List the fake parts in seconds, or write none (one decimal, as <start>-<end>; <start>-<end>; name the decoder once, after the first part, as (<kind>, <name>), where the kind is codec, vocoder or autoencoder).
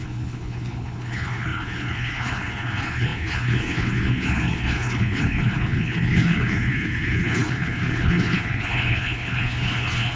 0.0-10.2 (codec, HILCodec)